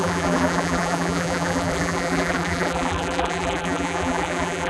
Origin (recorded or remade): remade